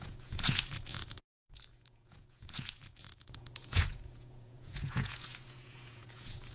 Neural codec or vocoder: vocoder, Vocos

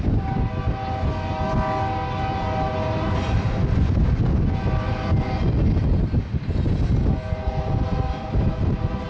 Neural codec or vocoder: none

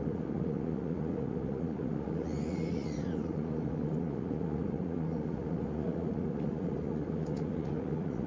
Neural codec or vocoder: vocoder, Vocos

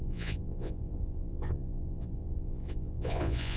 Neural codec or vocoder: vocoder, Vocos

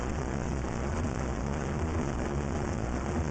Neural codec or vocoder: vocoder, Vocos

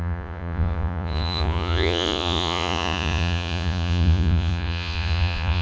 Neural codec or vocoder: vocoder, Vocos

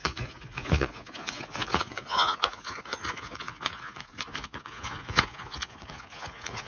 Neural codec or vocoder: vocoder, Vocos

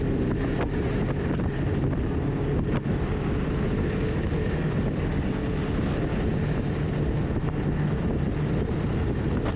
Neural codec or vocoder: none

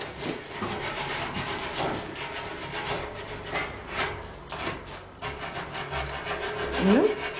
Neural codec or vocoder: none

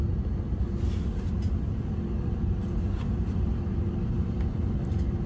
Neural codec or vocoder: none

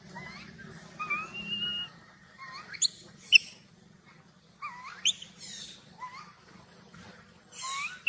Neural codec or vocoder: none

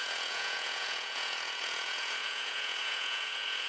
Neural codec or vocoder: vocoder, Vocos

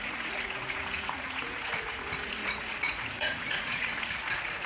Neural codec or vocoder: vocoder, Vocos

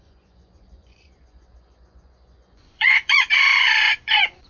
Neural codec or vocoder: vocoder, Vocos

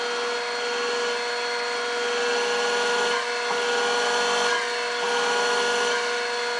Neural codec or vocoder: none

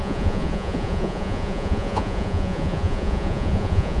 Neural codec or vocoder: vocoder, Vocos